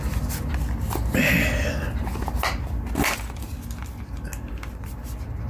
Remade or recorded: recorded